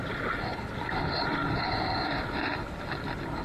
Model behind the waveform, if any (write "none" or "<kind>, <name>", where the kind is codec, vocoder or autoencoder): none